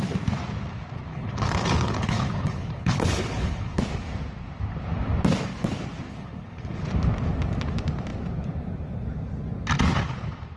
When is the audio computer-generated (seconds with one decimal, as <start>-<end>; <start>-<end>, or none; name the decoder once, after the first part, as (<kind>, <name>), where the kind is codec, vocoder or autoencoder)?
1.1-3.8 (codec, HILCodec); 6.1-6.9